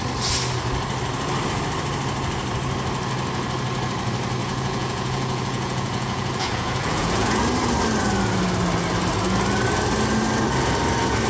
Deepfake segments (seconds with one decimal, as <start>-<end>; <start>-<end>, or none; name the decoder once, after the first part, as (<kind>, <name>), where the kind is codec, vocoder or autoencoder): 4.4-7.4 (vocoder, Vocos)

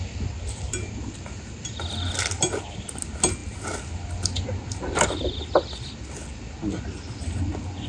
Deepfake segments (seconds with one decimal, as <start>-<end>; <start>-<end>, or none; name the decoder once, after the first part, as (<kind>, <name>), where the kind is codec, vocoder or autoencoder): none

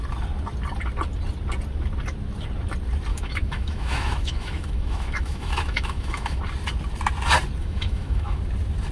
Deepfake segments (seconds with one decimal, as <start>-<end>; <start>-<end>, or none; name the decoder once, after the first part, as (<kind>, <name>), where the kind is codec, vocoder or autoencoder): 3.1-6.4 (autoencoder, DAC-VAE); 7.6-8.4

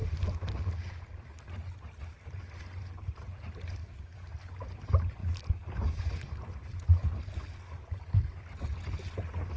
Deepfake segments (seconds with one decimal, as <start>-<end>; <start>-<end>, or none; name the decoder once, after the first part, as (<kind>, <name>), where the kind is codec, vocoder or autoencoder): 3.8-4.3 (codec, DAC)

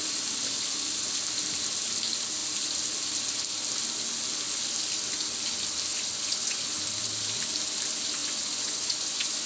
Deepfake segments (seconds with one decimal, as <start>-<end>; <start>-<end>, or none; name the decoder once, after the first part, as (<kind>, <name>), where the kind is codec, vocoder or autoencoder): 5.9-6.7 (vocoder, Vocos); 8.2-9.5

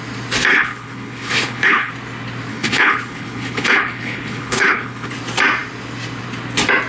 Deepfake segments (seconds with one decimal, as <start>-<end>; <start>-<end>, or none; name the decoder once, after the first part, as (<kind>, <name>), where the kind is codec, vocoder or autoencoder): 0.5-1.9 (codec, HILCodec); 2.5-5.1

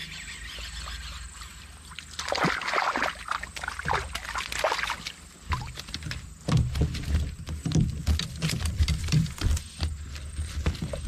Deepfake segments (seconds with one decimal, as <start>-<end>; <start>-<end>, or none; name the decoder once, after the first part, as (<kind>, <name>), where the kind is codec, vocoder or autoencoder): none

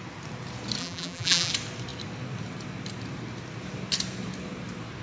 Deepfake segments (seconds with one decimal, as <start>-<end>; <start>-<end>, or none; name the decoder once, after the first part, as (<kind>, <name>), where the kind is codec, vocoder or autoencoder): 0.8-1.5 (vocoder, BigVGAN v2)